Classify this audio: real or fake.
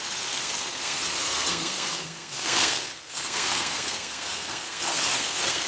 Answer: fake